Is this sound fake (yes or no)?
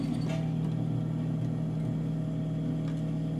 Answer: no